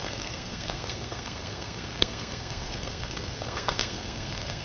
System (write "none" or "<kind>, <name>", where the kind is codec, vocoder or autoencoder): codec, SNAC